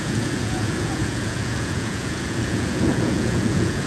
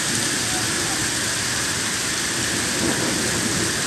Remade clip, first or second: first